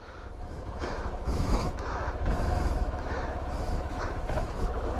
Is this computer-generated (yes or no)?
yes